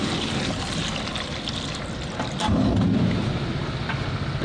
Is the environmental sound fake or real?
real